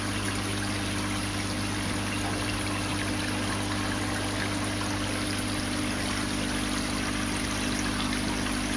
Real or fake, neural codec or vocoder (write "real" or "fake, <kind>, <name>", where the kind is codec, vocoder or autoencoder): real